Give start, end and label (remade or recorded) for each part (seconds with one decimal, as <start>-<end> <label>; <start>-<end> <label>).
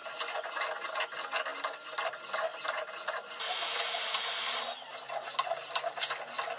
0.0-2.5 recorded; 2.5-4.6 remade; 4.6-6.6 recorded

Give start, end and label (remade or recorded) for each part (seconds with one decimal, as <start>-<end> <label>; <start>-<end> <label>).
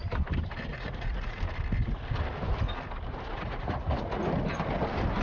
0.0-0.7 recorded; 0.7-1.4 remade; 1.4-3.3 recorded; 3.3-4.2 remade; 4.2-5.2 recorded